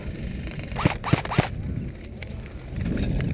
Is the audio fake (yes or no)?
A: no